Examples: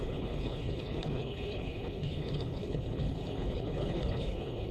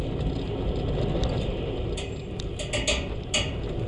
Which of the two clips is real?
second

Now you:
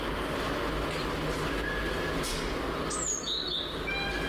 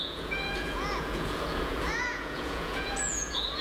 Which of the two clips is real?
first